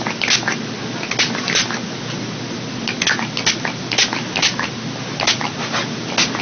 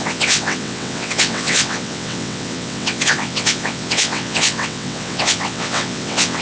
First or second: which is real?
first